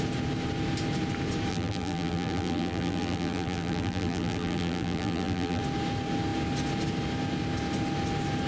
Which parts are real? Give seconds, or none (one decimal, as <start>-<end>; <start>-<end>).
0.0-1.5; 5.6-8.5